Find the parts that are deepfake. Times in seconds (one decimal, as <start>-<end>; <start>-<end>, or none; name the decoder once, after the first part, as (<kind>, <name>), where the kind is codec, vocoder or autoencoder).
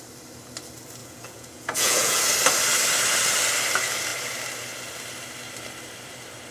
1.0-2.2 (vocoder, Vocos)